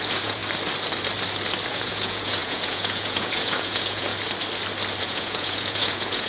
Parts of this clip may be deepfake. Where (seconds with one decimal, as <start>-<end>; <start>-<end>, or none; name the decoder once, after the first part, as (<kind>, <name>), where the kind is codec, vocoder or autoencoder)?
0.0-0.4 (vocoder, Vocos); 1.7-4.1; 5.0-6.3